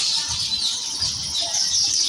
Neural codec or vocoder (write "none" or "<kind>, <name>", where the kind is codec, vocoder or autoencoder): vocoder, BigVGAN v2